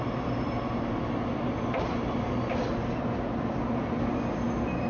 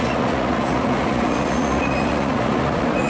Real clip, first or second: first